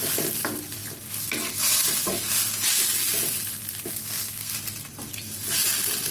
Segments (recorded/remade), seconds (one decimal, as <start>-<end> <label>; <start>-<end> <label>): 0.0-3.9 recorded; 3.9-4.5 remade; 4.5-6.1 recorded

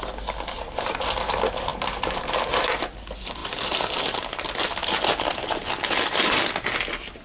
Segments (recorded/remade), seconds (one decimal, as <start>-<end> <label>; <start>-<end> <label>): 0.0-7.2 recorded

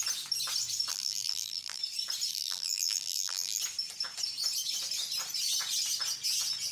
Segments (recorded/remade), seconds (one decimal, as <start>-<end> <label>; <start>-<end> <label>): 0.0-0.9 recorded; 0.9-1.8 remade; 1.8-2.3 recorded; 2.3-3.6 remade; 3.6-6.7 recorded

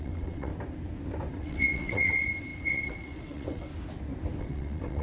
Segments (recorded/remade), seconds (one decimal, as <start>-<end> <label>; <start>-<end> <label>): 0.0-0.5 remade; 0.5-1.3 recorded; 1.3-3.7 remade; 3.7-4.4 recorded; 4.4-5.0 remade

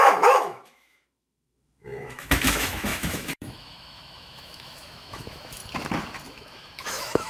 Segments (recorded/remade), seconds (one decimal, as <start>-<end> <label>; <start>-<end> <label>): 0.0-5.6 remade; 5.6-6.3 recorded; 6.3-7.3 remade